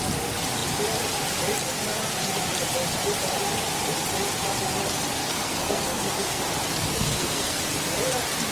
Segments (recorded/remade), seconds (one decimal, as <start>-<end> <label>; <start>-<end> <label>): 0.0-5.2 recorded; 5.2-6.4 remade; 6.4-6.9 recorded; 6.9-7.6 remade; 7.6-8.5 recorded